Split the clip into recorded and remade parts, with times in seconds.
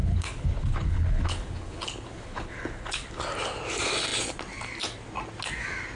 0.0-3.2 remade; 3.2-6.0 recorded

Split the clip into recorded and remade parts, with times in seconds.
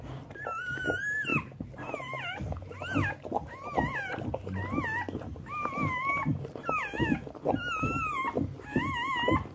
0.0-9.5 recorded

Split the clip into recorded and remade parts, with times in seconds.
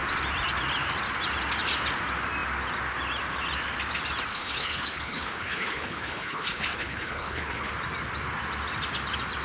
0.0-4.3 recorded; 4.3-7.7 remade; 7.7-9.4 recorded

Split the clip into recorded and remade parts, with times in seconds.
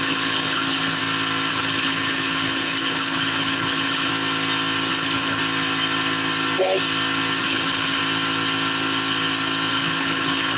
0.0-1.0 remade; 1.0-1.5 recorded; 1.5-4.1 remade; 4.1-4.9 recorded; 4.9-5.4 remade; 5.4-7.4 recorded; 7.4-8.0 remade; 8.0-9.7 recorded; 9.7-10.6 remade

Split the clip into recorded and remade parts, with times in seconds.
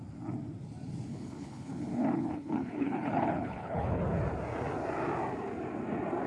0.0-1.1 recorded; 1.1-4.0 remade; 4.0-6.3 recorded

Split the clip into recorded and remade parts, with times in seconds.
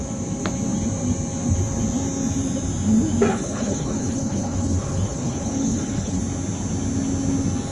0.0-3.3 recorded; 3.3-6.2 remade; 6.2-7.7 recorded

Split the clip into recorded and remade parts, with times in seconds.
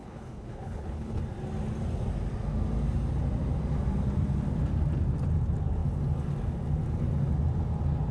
0.0-1.2 remade; 1.2-8.1 recorded